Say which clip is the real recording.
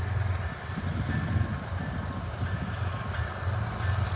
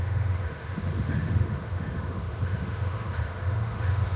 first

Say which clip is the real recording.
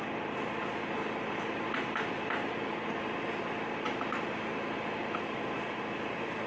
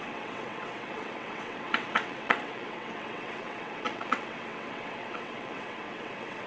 first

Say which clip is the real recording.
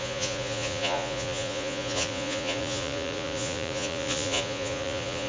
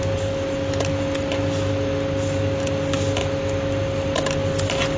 second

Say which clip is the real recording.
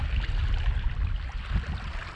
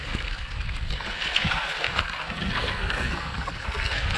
first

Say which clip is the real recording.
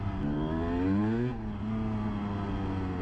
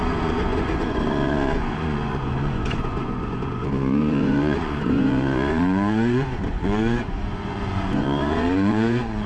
first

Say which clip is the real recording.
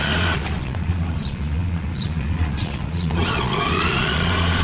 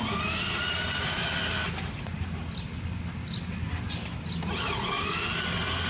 second